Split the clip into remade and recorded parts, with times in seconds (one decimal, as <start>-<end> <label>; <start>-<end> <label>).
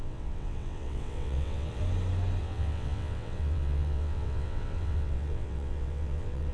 0.0-1.8 remade; 1.8-2.4 recorded; 2.4-6.5 remade